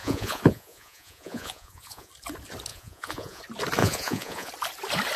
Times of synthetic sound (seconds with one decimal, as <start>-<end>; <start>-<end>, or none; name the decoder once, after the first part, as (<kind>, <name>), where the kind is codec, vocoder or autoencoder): 0.0-2.1 (vocoder, Vocos); 2.7-3.4; 3.8-4.5